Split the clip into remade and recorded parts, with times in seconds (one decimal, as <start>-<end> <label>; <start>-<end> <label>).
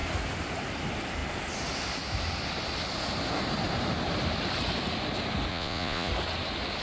0.0-5.5 recorded; 5.5-6.1 remade; 6.1-6.8 recorded